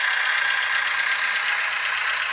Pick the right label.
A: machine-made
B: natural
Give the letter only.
B